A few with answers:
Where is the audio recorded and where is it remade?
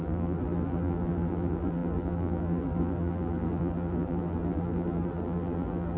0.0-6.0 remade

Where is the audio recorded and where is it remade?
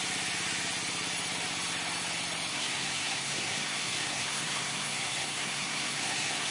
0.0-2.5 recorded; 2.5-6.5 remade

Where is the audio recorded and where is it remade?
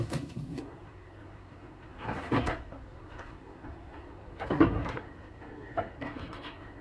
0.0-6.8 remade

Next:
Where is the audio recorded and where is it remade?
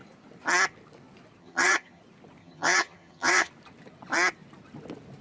0.0-1.4 recorded; 1.4-2.0 remade; 2.0-2.4 recorded; 2.4-3.5 remade; 3.5-5.2 recorded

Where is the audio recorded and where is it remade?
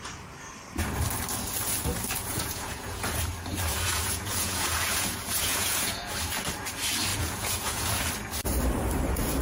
0.0-2.2 recorded; 2.2-3.2 remade; 3.2-3.7 recorded; 3.7-6.1 remade; 6.1-7.1 recorded; 7.1-8.1 remade; 8.1-9.4 recorded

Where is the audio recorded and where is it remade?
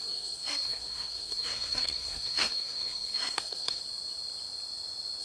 0.0-3.8 remade; 3.8-5.2 recorded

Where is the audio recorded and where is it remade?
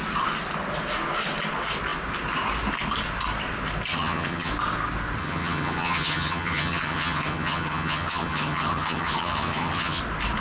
0.0-3.9 recorded; 3.9-4.5 remade; 4.5-5.2 recorded; 5.2-10.0 remade; 10.0-10.4 recorded